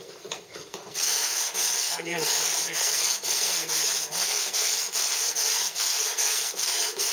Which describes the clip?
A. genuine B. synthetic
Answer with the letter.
B